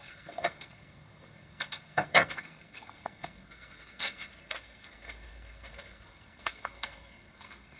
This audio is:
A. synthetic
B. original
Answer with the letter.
A